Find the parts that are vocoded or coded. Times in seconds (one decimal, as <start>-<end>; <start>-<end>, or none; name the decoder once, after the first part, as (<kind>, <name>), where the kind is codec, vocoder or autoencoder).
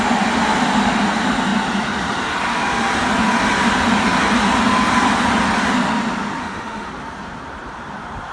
6.4-6.9 (autoencoder, DAC-VAE)